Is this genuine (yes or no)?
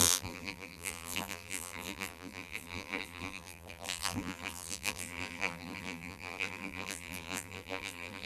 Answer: no